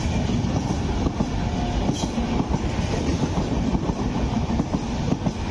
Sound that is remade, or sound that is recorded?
recorded